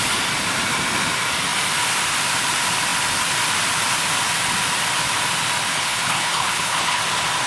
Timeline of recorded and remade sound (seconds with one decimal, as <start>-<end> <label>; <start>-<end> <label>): 0.0-5.7 recorded; 5.7-7.0 remade; 7.0-7.5 recorded